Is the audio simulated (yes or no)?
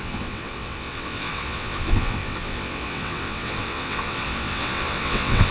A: yes